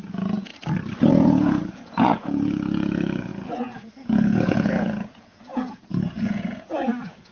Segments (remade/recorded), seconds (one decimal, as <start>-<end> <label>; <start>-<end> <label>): 0.0-0.5 remade; 0.5-1.1 recorded; 1.1-7.3 remade